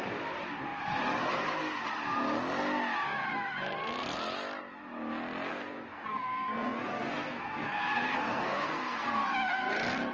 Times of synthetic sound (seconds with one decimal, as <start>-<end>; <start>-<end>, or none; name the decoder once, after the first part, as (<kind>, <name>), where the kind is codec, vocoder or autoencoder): 5.5-9.3 (codec, SNAC)